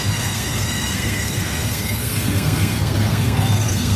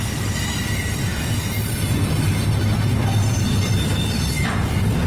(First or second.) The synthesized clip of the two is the first